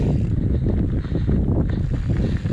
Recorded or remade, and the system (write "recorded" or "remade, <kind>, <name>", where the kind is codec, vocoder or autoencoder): recorded